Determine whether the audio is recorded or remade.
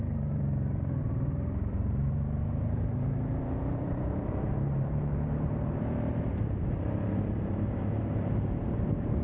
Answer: remade